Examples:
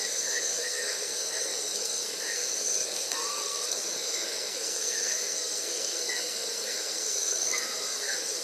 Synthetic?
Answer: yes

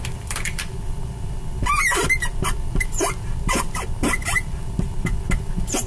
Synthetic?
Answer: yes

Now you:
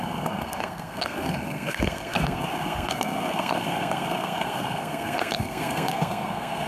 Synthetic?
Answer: yes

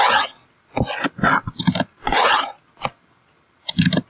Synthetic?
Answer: no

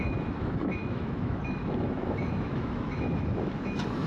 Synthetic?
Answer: yes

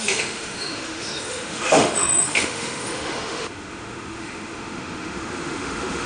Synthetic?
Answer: yes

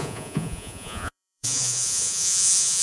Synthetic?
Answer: yes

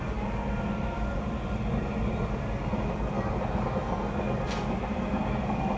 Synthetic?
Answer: no